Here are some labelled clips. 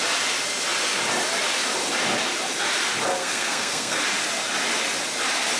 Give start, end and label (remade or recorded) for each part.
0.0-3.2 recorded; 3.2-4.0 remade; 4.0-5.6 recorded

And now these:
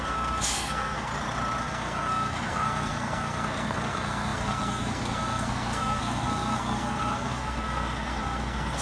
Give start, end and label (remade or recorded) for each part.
0.0-1.1 remade; 1.1-1.6 recorded; 1.6-8.8 remade